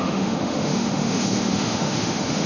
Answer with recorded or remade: remade